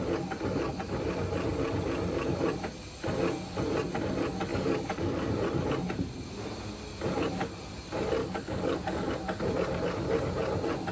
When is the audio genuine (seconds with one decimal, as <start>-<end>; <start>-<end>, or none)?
0.0-4.5; 5.3-8.2; 9.1-10.9